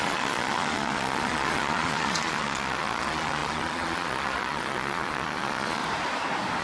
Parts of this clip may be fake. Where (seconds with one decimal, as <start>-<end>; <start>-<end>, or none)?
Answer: 0.0-5.8